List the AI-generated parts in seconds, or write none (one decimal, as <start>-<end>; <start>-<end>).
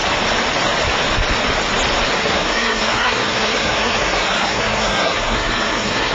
2.2-6.1